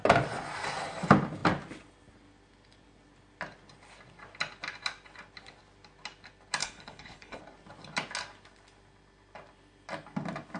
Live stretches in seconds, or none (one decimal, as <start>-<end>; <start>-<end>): 0.0-6.6; 7.4-10.6